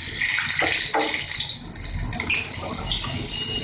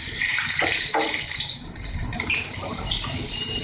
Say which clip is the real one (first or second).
first